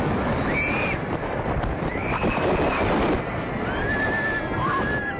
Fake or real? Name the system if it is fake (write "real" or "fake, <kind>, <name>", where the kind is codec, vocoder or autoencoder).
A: real